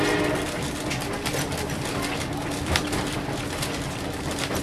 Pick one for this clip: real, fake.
real